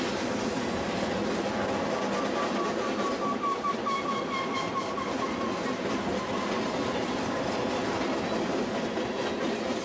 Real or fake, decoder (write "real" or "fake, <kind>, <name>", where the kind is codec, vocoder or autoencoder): real